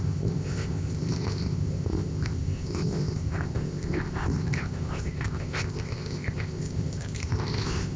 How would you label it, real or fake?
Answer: fake